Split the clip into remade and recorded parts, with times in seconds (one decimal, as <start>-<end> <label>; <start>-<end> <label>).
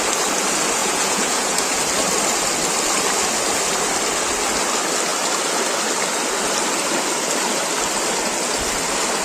0.0-0.8 recorded; 0.8-1.8 remade; 1.8-9.2 recorded